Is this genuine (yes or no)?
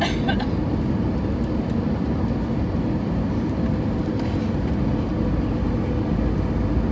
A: yes